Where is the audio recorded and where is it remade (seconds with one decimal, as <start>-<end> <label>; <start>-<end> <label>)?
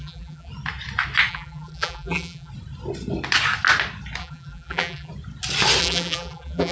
0.0-0.5 remade; 0.5-1.3 recorded; 1.3-2.5 remade; 2.5-4.2 recorded; 4.2-5.1 remade; 5.1-5.8 recorded; 5.8-6.7 remade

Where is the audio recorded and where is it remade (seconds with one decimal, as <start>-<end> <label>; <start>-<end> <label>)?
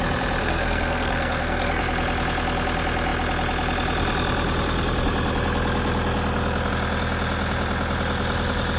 0.0-0.4 recorded; 0.4-1.8 remade; 1.8-8.8 recorded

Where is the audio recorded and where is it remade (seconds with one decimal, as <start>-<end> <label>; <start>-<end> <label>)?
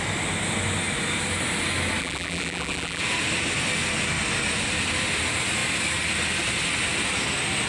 0.0-2.0 recorded; 2.0-3.0 remade; 3.0-7.7 recorded